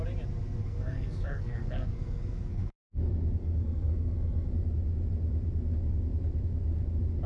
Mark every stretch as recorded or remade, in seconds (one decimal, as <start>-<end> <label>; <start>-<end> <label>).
0.0-0.6 recorded; 0.6-3.0 remade; 3.0-3.4 recorded; 3.4-4.5 remade; 4.5-7.3 recorded

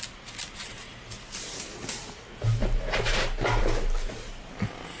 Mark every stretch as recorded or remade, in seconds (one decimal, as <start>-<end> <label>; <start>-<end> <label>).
0.0-5.0 recorded

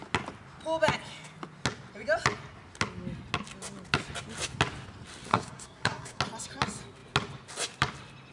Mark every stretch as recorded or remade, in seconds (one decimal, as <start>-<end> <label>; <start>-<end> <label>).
0.0-5.3 recorded; 5.3-6.2 remade; 6.2-8.3 recorded